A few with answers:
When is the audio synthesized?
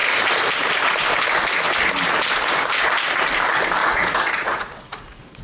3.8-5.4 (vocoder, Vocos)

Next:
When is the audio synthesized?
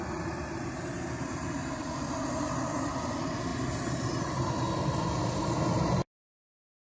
none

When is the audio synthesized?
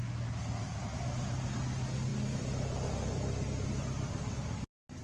none